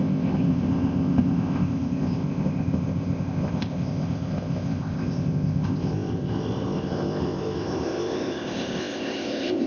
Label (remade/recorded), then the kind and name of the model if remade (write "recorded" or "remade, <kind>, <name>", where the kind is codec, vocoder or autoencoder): remade, codec, ZipCodec